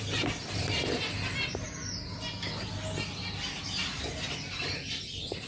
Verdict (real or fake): real